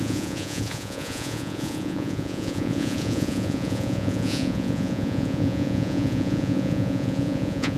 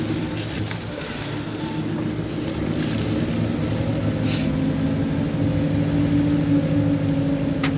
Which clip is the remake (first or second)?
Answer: first